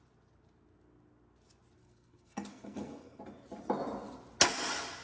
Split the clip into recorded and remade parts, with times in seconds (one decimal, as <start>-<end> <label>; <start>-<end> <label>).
0.0-1.8 recorded; 1.8-3.2 remade; 3.2-5.0 recorded

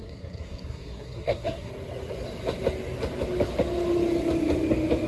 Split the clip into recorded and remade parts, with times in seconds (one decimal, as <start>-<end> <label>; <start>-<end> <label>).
0.0-1.7 remade; 1.7-5.1 recorded

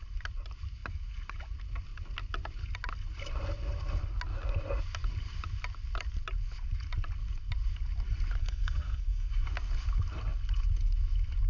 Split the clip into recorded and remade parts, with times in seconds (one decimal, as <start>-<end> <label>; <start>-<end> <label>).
0.0-8.4 recorded; 8.4-9.3 remade; 9.3-11.5 recorded

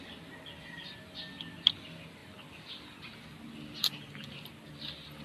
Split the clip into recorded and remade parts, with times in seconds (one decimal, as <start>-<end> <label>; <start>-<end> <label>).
0.0-5.2 recorded